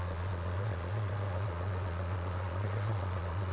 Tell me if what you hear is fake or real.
fake